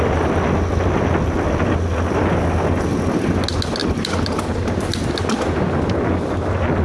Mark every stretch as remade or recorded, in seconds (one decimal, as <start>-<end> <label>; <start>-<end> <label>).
0.0-3.8 recorded; 3.8-6.0 remade; 6.0-6.8 recorded